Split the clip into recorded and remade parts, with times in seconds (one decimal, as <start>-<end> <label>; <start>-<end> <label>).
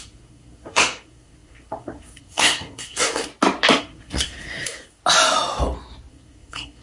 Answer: 0.0-3.3 remade; 3.3-3.8 recorded; 3.8-5.0 remade; 5.0-6.1 recorded; 6.1-6.8 remade